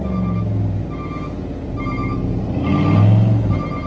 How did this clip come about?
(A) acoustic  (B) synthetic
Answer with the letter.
A